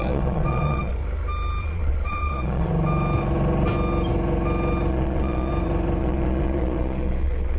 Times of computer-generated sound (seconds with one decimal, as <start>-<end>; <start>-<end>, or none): 0.0-1.0; 1.6-2.7; 4.9-5.5; 6.0-7.6